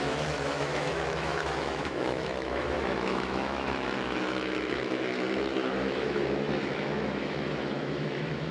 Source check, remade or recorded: remade